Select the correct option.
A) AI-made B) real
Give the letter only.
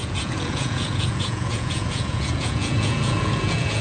A